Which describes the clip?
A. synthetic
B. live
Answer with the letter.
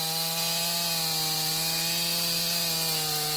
B